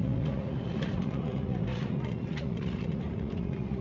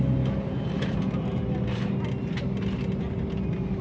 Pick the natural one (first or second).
second